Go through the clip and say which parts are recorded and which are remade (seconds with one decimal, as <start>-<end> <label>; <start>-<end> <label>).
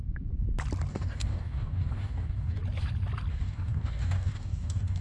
0.0-0.9 recorded; 0.9-2.6 remade; 2.6-3.3 recorded; 3.3-5.0 remade